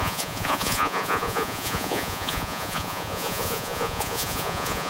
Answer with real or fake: fake